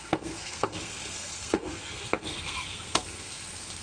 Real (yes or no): no